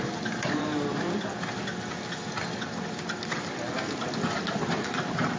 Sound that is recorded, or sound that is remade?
recorded